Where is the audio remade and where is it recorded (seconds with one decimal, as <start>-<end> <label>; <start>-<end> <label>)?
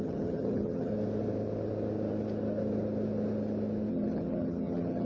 0.0-0.9 remade; 0.9-3.9 recorded; 3.9-5.0 remade